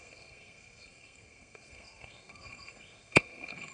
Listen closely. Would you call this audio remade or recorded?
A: remade